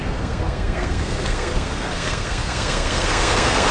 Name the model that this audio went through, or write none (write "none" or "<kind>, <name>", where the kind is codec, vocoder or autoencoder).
codec, SNAC